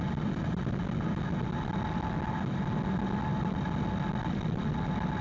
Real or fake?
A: real